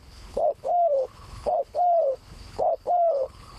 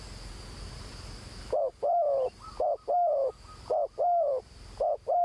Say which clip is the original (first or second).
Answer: second